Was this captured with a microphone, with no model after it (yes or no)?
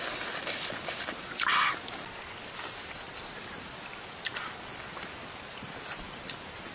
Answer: yes